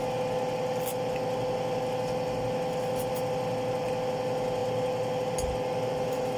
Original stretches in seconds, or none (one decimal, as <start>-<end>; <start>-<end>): 0.0-6.4